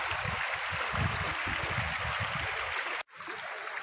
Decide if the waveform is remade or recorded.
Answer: recorded